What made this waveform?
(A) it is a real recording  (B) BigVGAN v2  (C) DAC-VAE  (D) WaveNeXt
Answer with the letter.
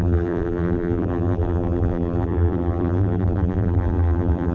B